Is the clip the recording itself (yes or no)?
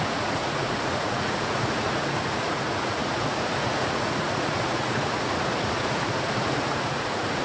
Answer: no